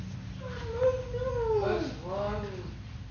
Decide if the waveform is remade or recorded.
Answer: recorded